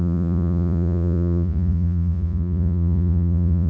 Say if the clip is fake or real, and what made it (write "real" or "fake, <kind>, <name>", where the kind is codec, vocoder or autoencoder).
fake, vocoder, Vocos